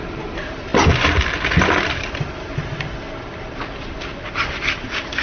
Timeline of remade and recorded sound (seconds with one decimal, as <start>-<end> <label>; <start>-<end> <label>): 0.0-5.2 recorded